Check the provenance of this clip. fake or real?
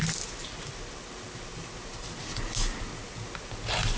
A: real